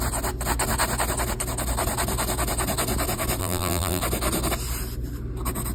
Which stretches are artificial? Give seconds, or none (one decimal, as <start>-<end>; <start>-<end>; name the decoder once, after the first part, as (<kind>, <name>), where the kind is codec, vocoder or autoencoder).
3.4-4.0 (vocoder, BigVGAN v2)